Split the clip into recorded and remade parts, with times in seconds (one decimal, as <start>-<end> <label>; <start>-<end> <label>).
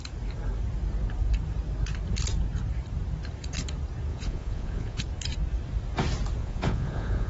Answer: 0.0-4.1 recorded; 4.1-5.0 remade; 5.0-6.4 recorded; 6.4-7.3 remade